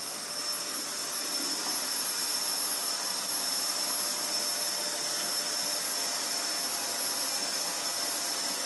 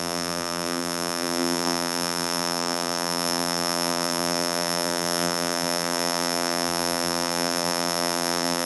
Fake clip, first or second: second